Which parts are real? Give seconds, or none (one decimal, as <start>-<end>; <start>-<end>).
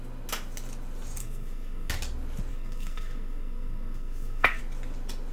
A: 0.0-1.2; 1.9-2.5; 4.6-5.3